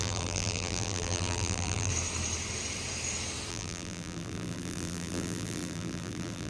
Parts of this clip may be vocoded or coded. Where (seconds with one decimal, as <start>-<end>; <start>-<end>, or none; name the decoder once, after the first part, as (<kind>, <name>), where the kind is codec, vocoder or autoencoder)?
0.0-1.9 (vocoder, BigVGAN v2); 3.5-6.5